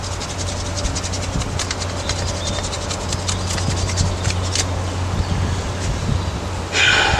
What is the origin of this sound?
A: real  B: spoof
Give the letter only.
A